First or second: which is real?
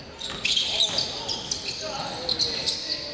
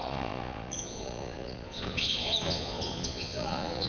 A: first